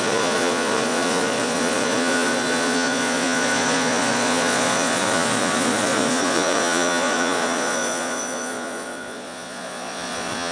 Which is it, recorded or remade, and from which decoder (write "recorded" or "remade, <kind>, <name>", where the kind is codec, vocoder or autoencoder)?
remade, vocoder, Vocos